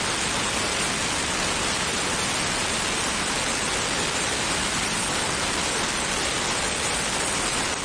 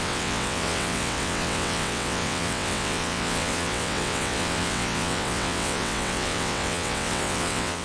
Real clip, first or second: first